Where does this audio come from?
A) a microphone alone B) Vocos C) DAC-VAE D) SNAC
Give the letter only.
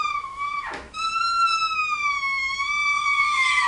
C